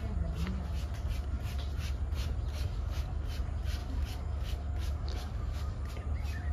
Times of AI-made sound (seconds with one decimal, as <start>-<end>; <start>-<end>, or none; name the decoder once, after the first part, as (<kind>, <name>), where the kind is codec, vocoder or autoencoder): 2.5-3.3 (codec, DAC); 3.8-5.9